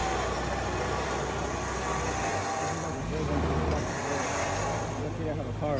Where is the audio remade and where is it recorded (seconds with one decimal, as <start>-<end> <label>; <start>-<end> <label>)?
0.0-5.8 recorded